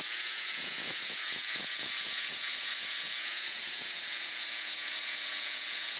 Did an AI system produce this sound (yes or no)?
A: yes